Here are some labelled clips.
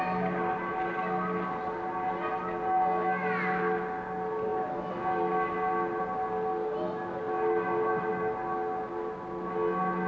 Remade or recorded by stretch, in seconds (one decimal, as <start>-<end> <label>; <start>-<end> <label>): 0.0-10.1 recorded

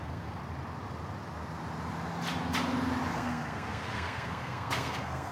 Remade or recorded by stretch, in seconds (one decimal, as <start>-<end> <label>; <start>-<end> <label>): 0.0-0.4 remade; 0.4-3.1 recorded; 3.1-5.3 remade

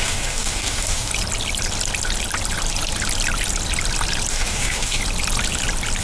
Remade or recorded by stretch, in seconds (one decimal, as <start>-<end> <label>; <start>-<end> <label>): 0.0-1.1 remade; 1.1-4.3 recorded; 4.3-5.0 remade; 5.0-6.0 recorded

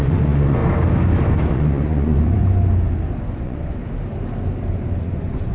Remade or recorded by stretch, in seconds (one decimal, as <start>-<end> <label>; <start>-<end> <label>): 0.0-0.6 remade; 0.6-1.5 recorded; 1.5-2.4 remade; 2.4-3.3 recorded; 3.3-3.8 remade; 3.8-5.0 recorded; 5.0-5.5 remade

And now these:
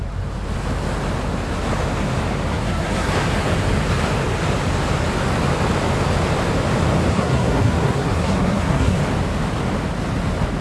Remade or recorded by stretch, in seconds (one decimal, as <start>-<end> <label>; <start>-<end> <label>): 0.0-2.5 recorded; 2.5-3.1 remade; 3.1-7.1 recorded; 7.1-9.0 remade; 9.0-10.6 recorded

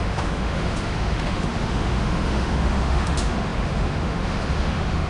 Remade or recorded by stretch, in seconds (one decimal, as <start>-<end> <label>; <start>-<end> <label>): 0.0-5.1 remade